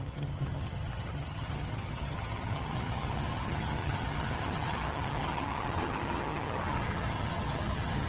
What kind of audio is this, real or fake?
fake